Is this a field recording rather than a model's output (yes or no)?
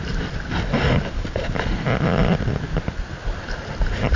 yes